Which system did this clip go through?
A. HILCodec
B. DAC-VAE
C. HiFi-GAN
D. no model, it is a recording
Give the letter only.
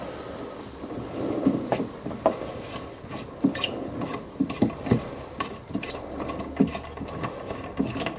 D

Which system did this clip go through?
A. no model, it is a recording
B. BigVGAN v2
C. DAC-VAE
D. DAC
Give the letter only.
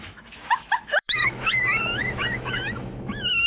C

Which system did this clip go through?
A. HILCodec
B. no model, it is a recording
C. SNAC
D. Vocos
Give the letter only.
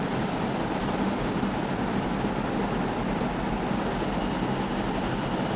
B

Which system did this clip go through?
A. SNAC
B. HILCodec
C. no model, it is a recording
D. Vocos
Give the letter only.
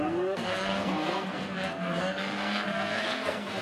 A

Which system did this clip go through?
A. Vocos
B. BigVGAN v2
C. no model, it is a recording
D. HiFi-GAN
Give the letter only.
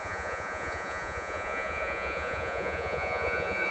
A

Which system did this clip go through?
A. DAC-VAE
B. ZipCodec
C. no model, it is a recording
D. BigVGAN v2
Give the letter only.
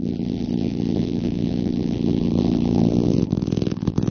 D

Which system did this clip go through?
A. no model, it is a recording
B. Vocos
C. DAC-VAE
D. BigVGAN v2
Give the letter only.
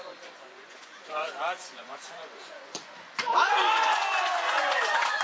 B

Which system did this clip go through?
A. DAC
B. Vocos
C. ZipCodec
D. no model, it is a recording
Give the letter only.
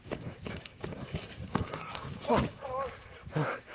A